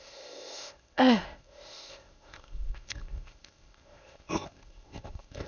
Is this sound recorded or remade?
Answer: remade